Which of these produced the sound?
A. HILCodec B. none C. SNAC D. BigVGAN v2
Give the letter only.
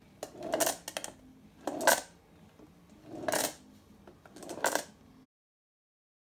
B